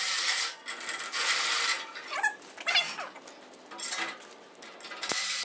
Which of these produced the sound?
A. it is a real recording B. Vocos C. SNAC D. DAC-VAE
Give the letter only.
A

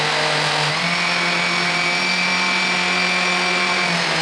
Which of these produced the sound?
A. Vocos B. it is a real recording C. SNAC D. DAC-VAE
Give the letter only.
B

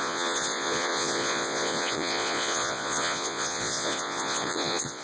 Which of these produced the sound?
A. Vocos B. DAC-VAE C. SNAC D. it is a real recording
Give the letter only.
A